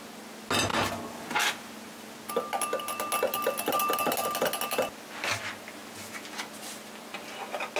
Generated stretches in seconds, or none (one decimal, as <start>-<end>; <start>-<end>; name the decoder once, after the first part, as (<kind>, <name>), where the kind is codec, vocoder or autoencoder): none